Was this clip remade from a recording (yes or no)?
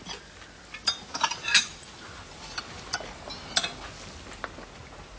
no